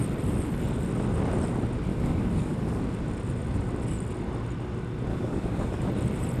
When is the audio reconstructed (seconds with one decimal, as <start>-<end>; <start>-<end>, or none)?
1.9-2.8; 5.1-5.9